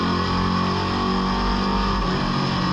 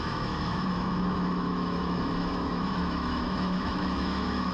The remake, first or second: second